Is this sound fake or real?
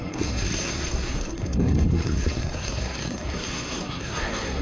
fake